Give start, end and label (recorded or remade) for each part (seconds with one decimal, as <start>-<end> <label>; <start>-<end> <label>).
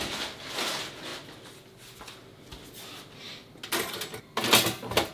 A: 0.0-5.1 recorded